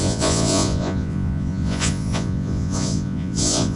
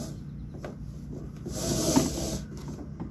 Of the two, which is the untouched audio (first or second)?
second